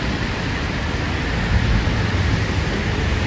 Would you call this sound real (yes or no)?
yes